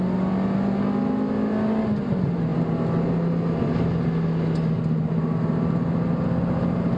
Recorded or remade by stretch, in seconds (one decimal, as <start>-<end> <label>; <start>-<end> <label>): 0.0-7.0 recorded